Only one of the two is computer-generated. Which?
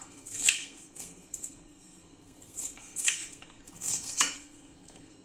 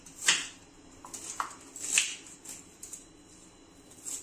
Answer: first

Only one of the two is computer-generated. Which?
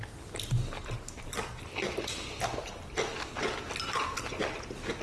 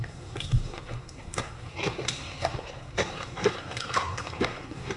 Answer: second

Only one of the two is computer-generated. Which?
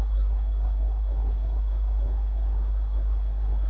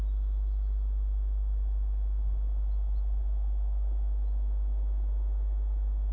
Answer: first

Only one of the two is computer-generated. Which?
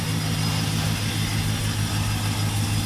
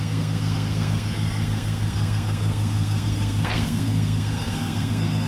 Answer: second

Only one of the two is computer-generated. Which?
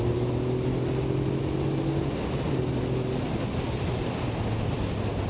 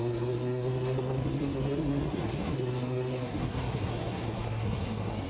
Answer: second